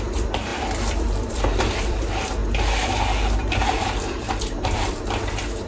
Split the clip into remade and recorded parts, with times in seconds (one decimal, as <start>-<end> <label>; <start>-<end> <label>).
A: 0.0-5.7 remade